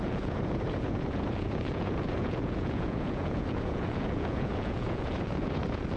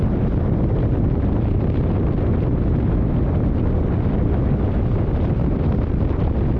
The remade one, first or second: first